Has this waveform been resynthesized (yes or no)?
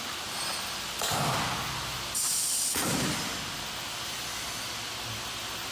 no